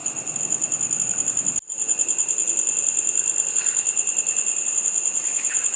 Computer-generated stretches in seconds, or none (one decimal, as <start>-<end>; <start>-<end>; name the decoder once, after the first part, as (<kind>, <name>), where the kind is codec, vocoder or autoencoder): none